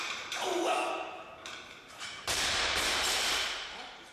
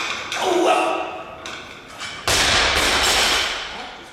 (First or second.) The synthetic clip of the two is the first